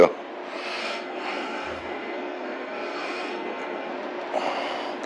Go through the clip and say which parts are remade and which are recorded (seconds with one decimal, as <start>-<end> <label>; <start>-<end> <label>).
0.0-0.8 recorded; 0.8-3.9 remade; 3.9-5.1 recorded